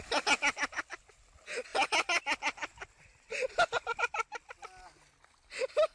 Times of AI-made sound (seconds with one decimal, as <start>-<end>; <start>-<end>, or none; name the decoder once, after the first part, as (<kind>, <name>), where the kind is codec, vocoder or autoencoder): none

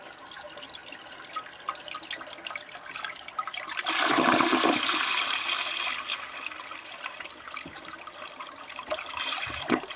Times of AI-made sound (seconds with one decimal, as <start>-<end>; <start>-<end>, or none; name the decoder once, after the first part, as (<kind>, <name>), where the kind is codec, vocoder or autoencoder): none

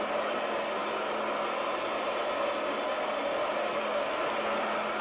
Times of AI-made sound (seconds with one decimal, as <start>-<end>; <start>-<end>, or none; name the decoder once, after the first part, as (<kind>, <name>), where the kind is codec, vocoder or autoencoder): none